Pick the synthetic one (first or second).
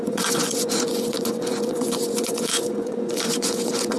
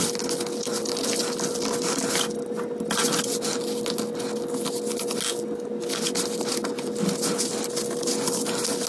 first